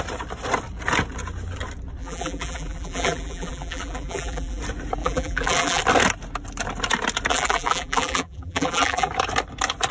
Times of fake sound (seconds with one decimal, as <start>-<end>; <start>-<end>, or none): 2.0-4.6; 5.0-5.8; 7.3-9.1